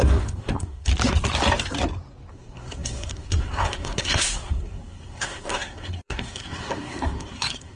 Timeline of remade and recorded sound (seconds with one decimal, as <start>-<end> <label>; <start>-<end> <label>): 0.0-0.9 remade; 0.9-2.3 recorded; 2.3-7.8 remade

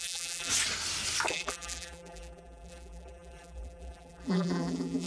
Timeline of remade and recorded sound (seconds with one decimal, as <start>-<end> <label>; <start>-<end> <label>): 0.0-0.5 remade; 0.5-1.3 recorded; 1.3-5.1 remade

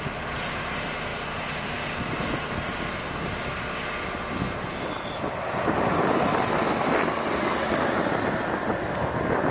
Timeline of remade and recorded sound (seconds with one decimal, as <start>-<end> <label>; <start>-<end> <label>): 0.0-9.5 recorded

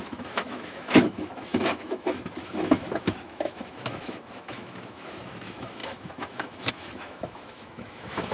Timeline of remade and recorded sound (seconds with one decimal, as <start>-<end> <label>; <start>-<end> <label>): 0.0-8.3 remade

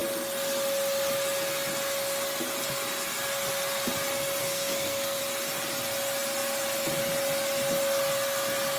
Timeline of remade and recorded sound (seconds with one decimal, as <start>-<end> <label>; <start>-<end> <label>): 0.0-4.4 recorded; 4.4-5.2 remade; 5.2-8.8 recorded

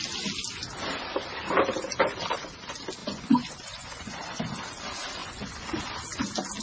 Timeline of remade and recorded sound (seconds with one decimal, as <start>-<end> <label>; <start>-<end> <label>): 0.0-3.0 recorded; 3.0-4.4 remade; 4.4-5.2 recorded; 5.2-5.8 remade; 5.8-6.6 recorded

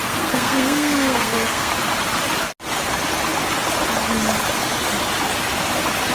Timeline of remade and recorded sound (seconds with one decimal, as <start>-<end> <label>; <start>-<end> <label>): 0.0-1.7 remade; 1.7-6.1 recorded